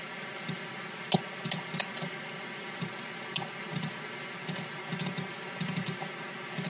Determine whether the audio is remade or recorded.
recorded